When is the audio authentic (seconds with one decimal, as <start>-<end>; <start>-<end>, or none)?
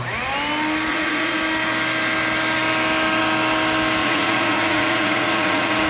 0.0-0.9; 1.4-4.0